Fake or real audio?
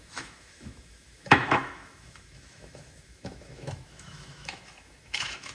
fake